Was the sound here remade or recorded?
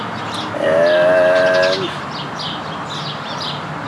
recorded